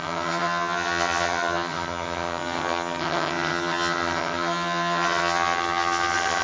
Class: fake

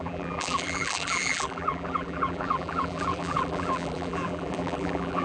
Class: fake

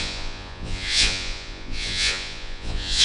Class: fake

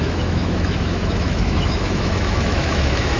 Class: fake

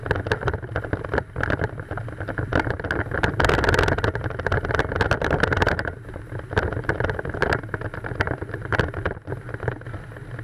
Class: real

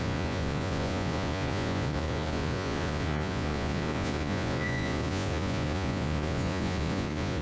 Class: fake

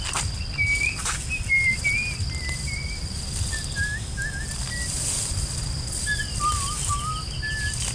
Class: real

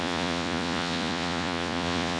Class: fake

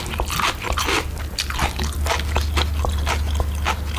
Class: real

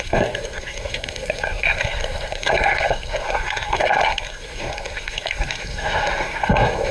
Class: fake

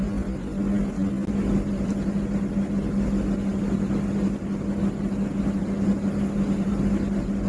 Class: real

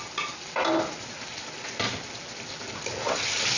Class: real